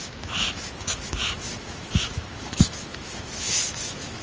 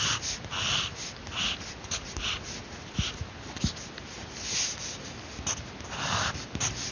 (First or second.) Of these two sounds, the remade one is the first